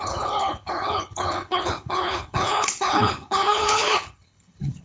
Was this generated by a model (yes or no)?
yes